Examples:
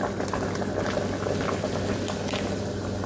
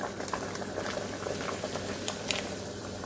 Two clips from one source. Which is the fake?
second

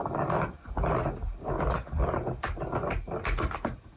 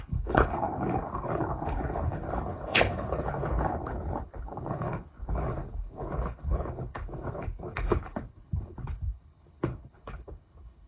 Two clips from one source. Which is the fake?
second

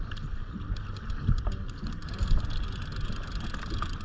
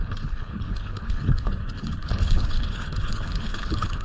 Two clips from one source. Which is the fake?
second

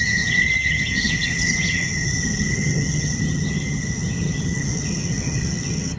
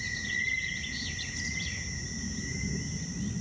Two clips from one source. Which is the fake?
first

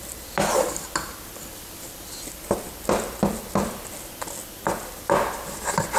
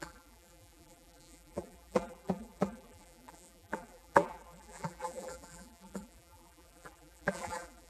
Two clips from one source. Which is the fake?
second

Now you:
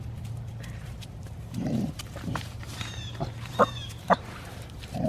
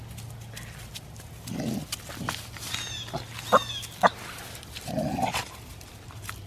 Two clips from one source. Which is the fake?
first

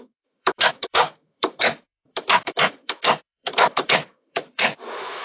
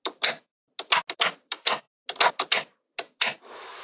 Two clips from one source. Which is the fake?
first